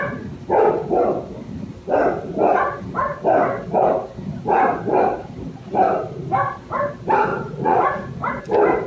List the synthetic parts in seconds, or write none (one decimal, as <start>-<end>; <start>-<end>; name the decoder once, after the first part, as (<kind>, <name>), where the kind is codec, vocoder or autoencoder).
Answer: 7.3-8.4 (vocoder, Vocos)